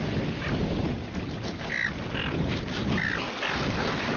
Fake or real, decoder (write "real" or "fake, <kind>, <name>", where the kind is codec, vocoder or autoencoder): real